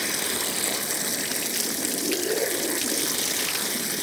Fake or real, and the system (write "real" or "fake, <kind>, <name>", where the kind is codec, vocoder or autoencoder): real